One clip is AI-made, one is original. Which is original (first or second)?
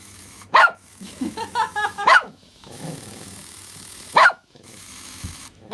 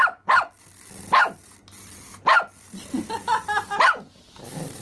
second